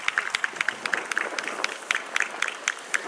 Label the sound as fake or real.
real